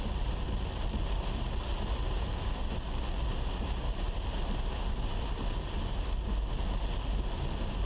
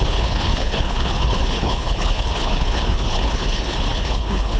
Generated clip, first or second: second